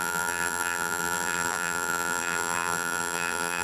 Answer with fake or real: fake